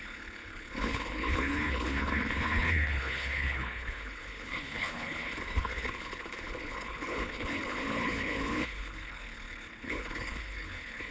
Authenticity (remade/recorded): remade